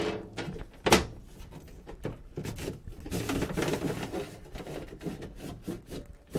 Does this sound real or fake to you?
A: real